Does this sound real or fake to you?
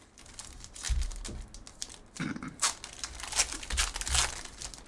real